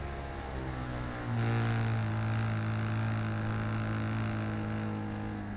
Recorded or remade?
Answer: recorded